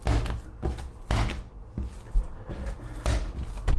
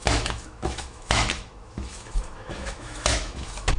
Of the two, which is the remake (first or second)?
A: second